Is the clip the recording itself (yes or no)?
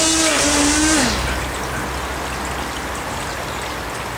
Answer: yes